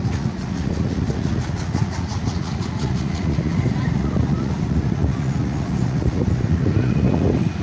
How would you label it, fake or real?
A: fake